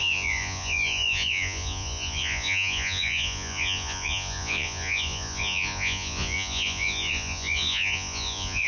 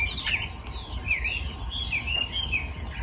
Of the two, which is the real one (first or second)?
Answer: second